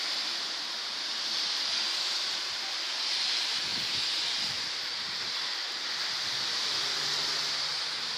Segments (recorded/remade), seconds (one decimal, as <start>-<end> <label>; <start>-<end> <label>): 0.0-8.2 recorded